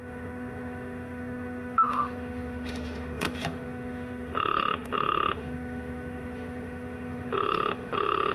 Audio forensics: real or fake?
fake